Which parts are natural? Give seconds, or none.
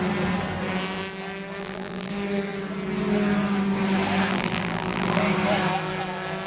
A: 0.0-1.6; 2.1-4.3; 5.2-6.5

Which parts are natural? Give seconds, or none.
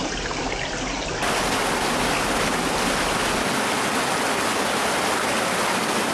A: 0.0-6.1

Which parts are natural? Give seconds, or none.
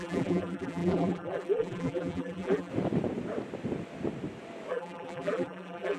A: 2.7-4.7